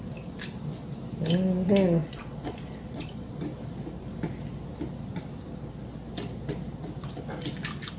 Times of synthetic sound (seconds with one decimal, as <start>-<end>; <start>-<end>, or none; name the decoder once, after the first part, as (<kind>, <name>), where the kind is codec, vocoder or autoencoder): 2.0-3.3 (vocoder, Vocos)